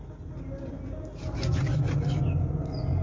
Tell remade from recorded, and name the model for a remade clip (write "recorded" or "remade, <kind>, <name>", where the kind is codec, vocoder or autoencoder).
recorded